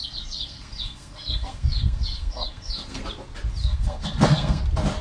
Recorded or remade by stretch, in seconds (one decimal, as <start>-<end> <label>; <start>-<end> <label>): 0.0-3.0 remade; 3.0-3.6 recorded; 3.6-4.6 remade; 4.6-5.0 recorded